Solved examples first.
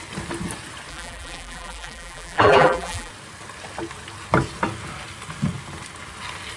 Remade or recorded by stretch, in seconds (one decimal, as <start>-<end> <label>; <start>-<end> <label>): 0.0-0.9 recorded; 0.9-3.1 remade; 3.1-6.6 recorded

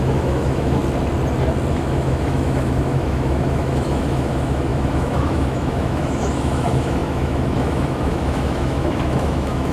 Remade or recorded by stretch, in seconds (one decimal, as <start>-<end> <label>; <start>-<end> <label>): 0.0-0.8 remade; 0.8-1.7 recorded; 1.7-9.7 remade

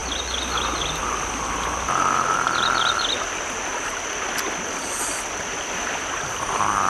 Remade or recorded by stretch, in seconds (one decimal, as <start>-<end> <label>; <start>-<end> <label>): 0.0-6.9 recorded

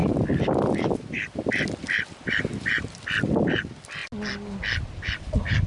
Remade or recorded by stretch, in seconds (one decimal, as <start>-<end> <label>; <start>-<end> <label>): 0.0-4.0 remade; 4.0-4.9 recorded; 4.9-5.7 remade